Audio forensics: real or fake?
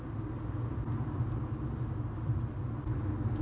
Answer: real